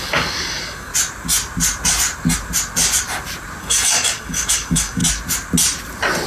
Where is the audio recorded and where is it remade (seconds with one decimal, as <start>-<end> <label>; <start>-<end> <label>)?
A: 0.0-0.9 remade; 0.9-3.6 recorded; 3.6-5.0 remade; 5.0-6.3 recorded